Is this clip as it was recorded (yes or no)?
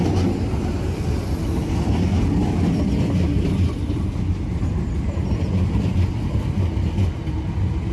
yes